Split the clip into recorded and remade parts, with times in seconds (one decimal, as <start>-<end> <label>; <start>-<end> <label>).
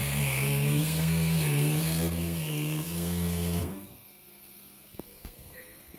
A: 0.0-6.0 remade